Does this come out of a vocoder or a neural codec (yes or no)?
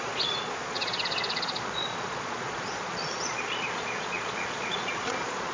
yes